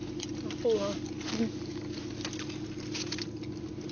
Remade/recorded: recorded